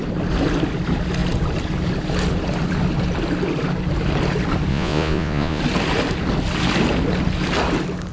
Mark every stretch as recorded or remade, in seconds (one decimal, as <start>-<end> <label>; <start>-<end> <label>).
0.0-4.7 recorded; 4.7-5.6 remade; 5.6-8.1 recorded